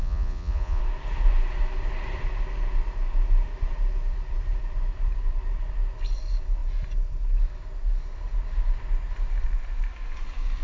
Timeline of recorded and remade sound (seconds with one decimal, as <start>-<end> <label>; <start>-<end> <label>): 0.0-0.8 remade; 0.8-10.6 recorded